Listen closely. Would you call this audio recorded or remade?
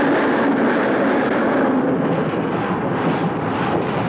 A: recorded